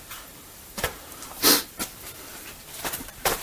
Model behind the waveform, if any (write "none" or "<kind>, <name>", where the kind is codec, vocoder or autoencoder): vocoder, BigVGAN v2